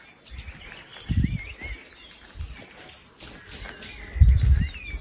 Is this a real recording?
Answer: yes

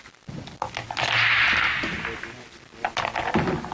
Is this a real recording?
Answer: yes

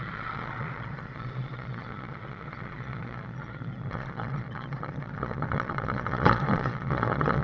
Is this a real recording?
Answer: no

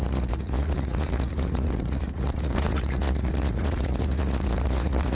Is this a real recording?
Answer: no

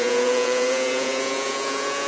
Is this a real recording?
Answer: no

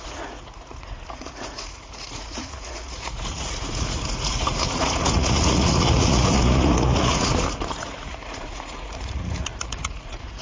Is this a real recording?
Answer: no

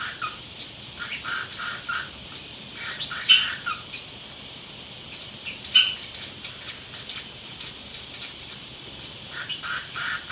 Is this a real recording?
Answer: yes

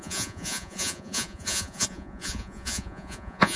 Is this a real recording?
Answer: no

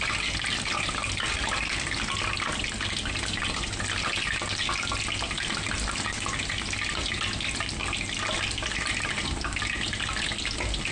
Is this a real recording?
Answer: yes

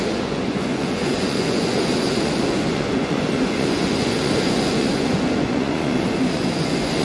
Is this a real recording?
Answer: no